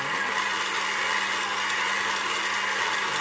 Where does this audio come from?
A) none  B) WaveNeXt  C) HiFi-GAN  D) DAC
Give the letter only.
A